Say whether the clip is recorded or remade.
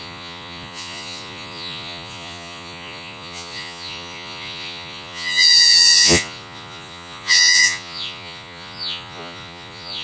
remade